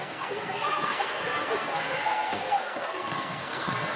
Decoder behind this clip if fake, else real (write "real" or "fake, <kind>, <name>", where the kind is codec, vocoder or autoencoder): fake, codec, SNAC